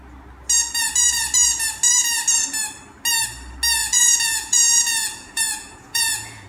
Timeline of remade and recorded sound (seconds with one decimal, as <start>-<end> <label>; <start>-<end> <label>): 0.0-3.8 recorded; 3.8-6.5 remade